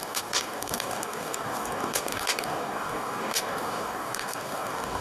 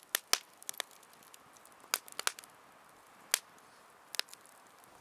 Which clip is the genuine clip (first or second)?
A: second